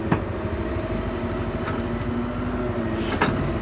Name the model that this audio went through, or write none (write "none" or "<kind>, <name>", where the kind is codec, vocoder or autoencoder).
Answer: none